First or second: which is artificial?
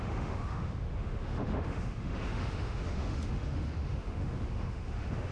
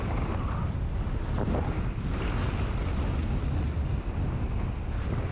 first